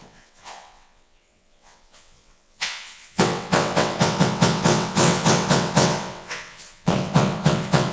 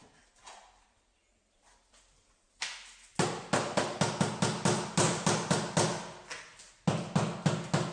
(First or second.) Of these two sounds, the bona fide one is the second